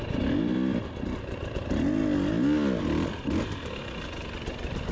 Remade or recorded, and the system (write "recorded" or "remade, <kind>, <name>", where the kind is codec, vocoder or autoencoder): recorded